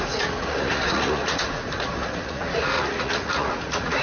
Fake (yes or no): yes